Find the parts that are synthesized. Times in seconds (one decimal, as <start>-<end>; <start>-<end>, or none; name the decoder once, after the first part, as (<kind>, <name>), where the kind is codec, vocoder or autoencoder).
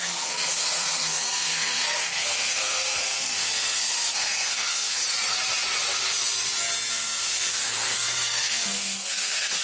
0.0-5.0 (codec, SNAC); 6.9-9.6